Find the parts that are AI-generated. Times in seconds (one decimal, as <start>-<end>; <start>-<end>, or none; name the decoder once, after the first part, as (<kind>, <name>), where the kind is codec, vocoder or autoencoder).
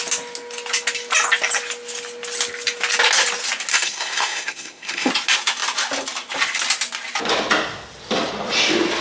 3.7-5.1 (codec, SNAC)